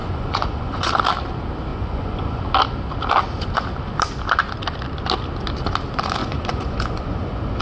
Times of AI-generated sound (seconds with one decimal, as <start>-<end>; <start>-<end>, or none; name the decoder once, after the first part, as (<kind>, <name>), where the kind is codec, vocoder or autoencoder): 0.0-0.9 (vocoder, Vocos); 1.7-2.4; 6.2-7.6